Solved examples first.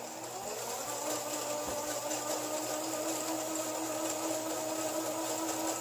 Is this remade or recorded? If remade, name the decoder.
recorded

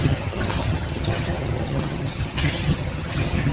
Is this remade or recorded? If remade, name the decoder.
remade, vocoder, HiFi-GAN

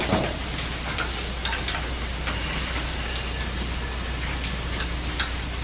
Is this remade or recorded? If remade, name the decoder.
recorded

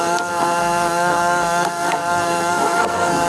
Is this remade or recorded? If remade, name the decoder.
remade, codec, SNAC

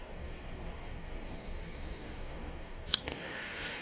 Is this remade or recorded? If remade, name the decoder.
remade, codec, DAC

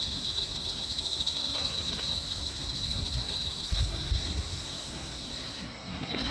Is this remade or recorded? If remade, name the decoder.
remade, codec, SNAC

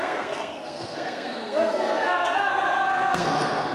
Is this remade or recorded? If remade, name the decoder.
remade, codec, SNAC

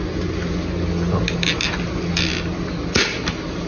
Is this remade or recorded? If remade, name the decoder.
recorded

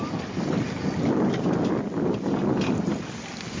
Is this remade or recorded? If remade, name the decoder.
recorded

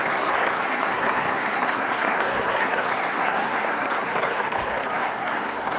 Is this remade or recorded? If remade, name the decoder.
remade, codec, SNAC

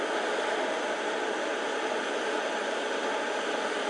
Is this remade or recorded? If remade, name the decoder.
recorded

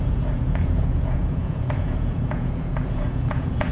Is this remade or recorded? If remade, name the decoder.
remade, vocoder, Vocos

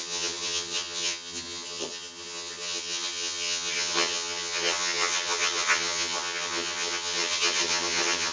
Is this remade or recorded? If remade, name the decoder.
remade, vocoder, HiFi-GAN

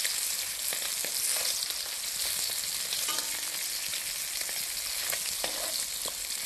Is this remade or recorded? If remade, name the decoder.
recorded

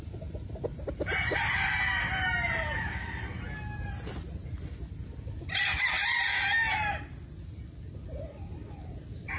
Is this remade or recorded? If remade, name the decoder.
recorded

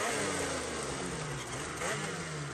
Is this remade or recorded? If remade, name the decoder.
recorded